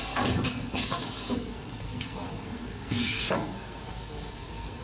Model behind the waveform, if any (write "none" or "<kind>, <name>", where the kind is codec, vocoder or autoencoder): codec, SNAC